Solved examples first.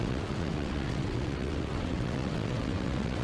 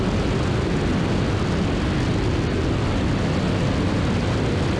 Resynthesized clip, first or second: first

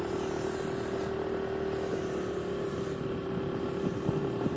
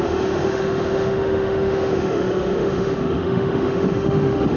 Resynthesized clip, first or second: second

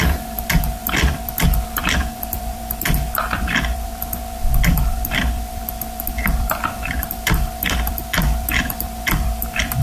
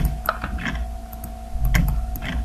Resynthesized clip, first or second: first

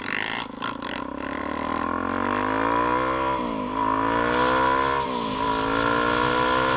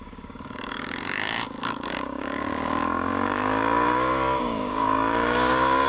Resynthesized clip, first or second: second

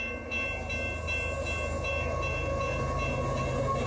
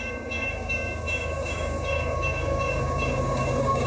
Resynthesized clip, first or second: second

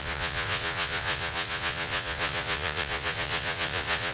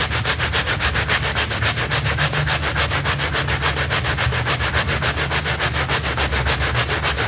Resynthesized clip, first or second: first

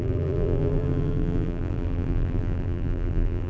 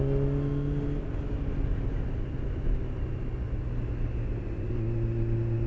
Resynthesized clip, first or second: first